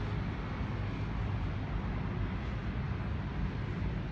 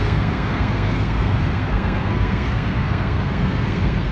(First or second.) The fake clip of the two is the second